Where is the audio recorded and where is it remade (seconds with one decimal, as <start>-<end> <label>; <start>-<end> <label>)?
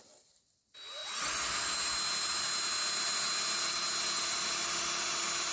0.0-5.5 recorded